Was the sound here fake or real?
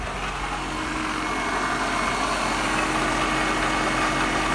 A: real